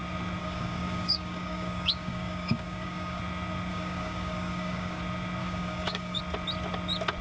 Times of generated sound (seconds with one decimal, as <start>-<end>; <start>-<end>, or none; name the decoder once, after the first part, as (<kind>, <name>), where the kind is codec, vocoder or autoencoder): 0.4-3.2 (codec, DAC); 3.7-5.0; 5.4-6.2